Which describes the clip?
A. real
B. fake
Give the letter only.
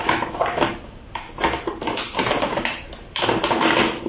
A